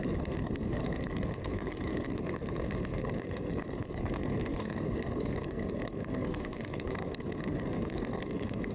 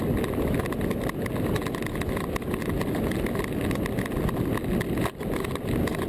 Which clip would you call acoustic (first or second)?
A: second